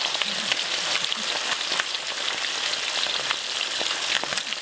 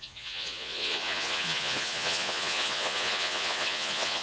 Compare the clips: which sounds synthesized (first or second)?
second